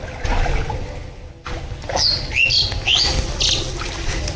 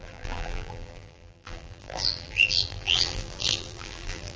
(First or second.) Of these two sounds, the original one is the first